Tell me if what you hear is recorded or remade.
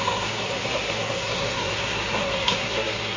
remade